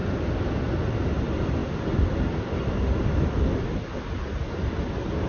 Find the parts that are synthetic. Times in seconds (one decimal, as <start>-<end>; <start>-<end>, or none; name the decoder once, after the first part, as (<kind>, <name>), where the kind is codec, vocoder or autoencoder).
none